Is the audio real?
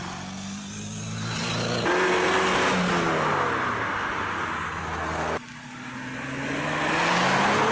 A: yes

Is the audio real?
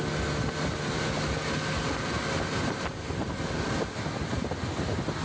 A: yes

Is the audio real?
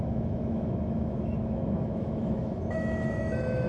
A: no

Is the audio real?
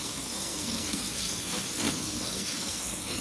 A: no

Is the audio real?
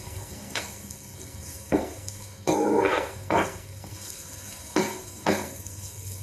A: no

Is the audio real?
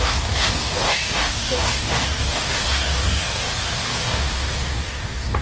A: no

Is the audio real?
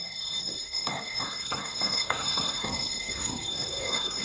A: no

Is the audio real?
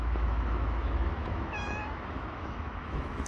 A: no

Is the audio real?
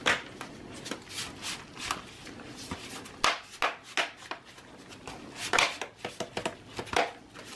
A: yes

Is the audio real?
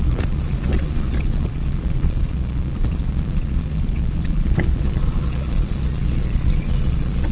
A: no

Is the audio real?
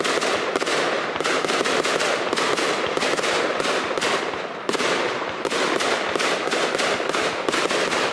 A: no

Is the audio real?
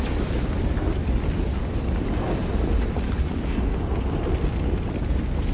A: yes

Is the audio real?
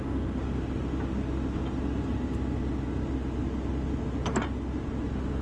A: yes